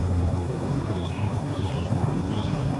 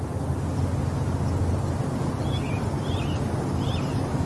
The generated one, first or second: first